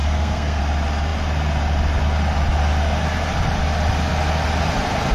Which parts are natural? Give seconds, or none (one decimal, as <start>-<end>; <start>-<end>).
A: 0.6-5.1